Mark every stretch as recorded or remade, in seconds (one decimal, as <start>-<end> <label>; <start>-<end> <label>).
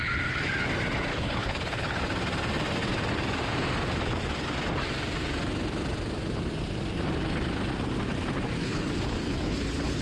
0.0-1.1 recorded; 1.1-2.0 remade; 2.0-8.6 recorded; 8.6-10.0 remade